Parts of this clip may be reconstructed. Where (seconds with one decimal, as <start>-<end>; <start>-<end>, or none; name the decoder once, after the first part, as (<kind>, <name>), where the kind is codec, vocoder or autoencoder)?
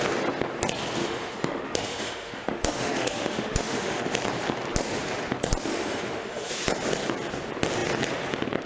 1.0-4.1 (autoencoder, DAC-VAE); 5.7-6.5